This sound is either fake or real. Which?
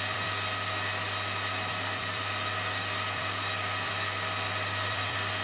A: fake